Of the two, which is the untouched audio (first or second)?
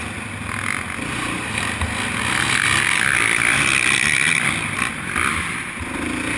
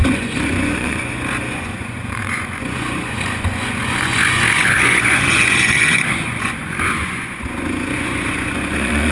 first